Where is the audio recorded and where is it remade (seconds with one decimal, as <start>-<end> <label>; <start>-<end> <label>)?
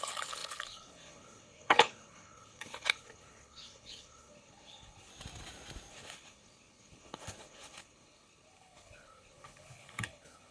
0.0-5.1 remade; 5.1-5.9 recorded; 5.9-10.5 remade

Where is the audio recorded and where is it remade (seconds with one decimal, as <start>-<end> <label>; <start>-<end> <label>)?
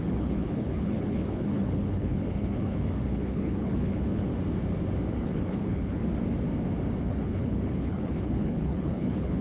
0.0-4.3 remade; 4.3-5.1 recorded; 5.1-6.0 remade; 6.0-7.0 recorded; 7.0-9.4 remade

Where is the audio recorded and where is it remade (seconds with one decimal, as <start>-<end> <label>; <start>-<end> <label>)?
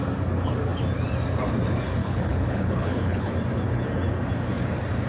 0.0-2.0 recorded; 2.0-3.3 remade; 3.3-5.1 recorded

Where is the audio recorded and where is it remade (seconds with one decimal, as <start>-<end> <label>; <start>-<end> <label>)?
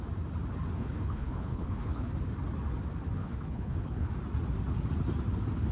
0.0-0.8 recorded; 0.8-2.1 remade; 2.1-3.2 recorded; 3.2-4.1 remade; 4.1-5.7 recorded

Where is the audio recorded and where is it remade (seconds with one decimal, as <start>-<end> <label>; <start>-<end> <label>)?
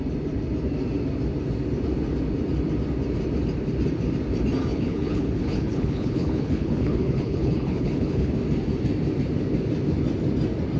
0.0-4.7 recorded; 4.7-8.3 remade; 8.3-10.8 recorded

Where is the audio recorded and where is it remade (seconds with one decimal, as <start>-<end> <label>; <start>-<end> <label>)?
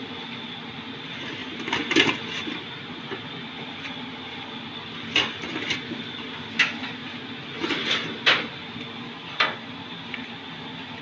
0.0-11.0 recorded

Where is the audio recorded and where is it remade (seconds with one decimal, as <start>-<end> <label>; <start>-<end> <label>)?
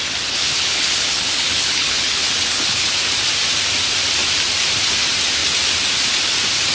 0.0-0.4 recorded; 0.4-2.9 remade; 2.9-6.7 recorded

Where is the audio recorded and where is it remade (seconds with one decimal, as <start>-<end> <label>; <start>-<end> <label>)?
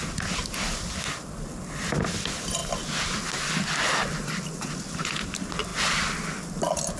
0.0-7.0 recorded